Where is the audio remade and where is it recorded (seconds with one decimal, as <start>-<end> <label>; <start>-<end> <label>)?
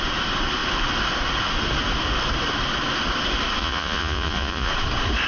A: 0.0-3.6 recorded; 3.6-4.7 remade; 4.7-5.3 recorded